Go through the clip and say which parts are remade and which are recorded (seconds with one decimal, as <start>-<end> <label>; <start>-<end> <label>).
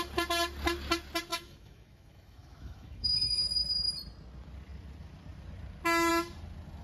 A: 0.0-1.3 recorded; 1.3-3.5 remade; 3.5-6.8 recorded